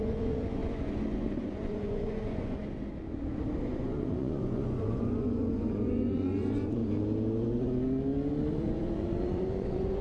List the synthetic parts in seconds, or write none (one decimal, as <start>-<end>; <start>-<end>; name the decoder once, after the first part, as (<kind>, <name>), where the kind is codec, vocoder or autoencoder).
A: 0.0-2.6 (vocoder, Vocos); 3.7-6.8; 8.5-10.0